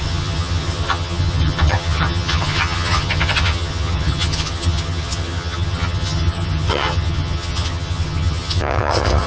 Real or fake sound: fake